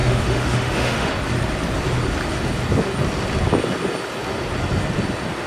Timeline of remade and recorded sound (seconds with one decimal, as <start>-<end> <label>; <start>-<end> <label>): 0.0-1.1 remade; 1.1-5.5 recorded